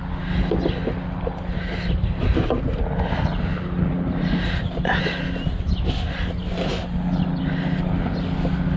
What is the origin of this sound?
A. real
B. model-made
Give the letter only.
A